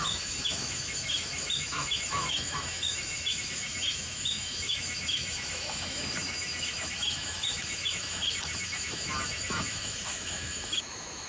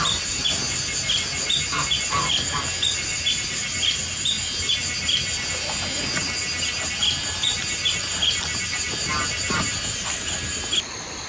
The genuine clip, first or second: second